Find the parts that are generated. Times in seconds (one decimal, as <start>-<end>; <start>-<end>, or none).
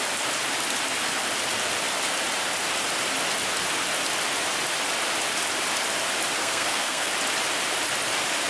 6.4-7.1